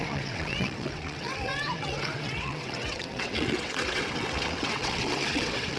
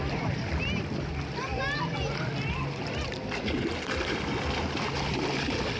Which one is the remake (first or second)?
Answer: first